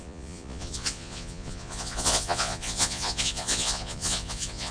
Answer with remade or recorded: remade